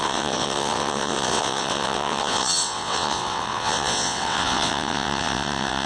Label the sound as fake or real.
fake